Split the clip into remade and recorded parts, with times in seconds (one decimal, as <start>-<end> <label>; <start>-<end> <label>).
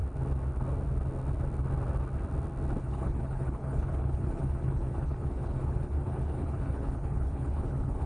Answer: 0.0-2.8 recorded; 2.8-8.1 remade